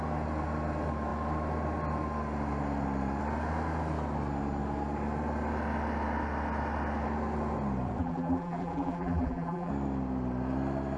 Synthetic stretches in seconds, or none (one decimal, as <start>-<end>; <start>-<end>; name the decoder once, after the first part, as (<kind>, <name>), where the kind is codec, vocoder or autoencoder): 8.0-9.7 (vocoder, BigVGAN v2)